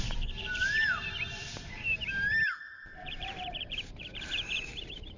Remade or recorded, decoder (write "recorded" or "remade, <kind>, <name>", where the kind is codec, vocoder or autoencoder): remade, vocoder, BigVGAN v2